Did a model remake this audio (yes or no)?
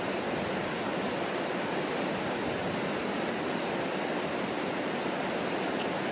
no